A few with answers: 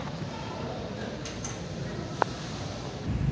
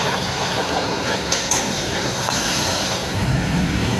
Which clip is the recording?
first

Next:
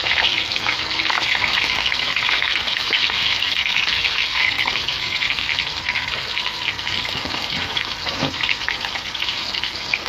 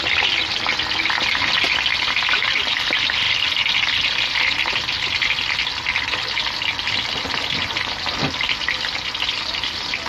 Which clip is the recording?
second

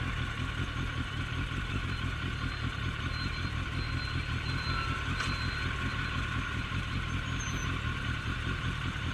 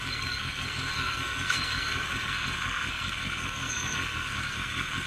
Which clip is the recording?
first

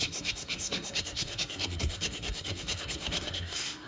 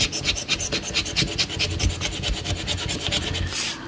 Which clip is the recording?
second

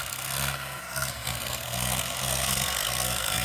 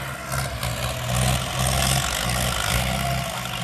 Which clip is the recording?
second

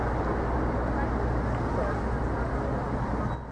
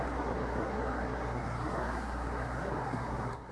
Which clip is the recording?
first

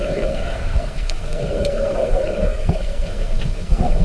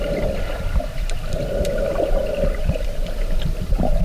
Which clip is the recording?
second